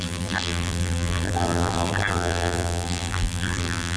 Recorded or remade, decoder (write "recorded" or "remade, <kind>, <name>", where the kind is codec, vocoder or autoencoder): remade, vocoder, BigVGAN v2